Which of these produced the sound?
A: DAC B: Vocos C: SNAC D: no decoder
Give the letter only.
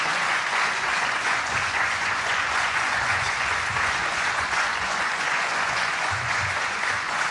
B